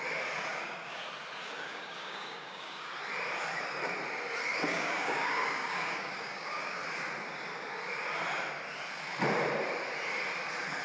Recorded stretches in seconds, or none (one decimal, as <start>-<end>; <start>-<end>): 0.0-0.5; 1.0-1.4; 2.9-4.7; 6.8-10.8

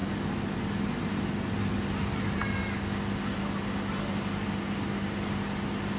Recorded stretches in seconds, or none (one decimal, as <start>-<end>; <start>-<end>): 0.0-6.0

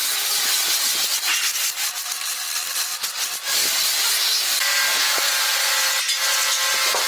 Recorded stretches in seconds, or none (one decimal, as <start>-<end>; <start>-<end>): 0.0-7.1

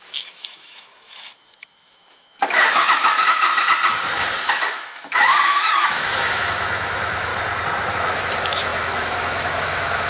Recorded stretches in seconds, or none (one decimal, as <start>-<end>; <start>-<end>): 3.5-4.4; 7.3-7.9

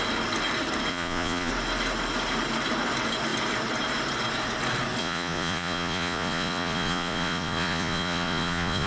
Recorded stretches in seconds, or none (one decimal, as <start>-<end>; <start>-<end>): 0.0-0.9; 1.5-5.0

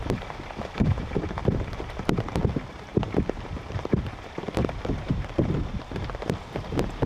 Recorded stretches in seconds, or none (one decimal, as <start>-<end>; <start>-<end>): none